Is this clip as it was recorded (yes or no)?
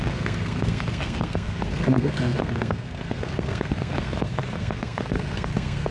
no